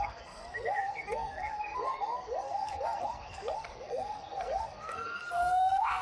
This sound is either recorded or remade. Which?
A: remade